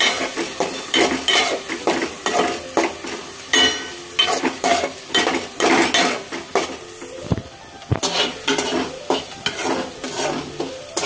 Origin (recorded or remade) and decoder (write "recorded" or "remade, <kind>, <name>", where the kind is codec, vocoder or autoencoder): recorded